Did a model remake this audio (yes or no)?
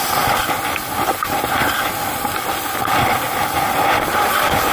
no